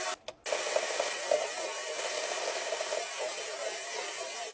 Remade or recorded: recorded